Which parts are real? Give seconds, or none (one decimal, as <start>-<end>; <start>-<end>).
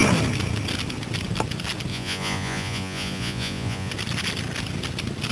0.0-1.9; 3.9-5.3